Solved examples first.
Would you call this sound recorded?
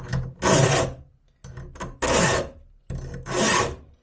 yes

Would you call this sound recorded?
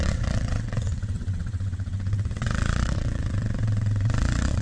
no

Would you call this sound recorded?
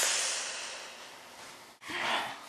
yes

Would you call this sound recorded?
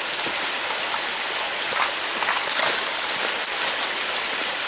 yes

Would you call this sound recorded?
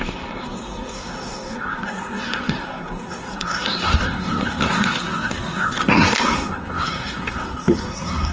no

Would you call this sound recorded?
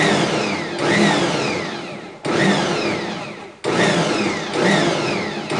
yes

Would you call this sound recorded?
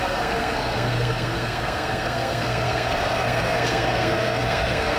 no